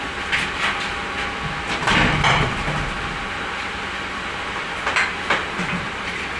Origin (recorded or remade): recorded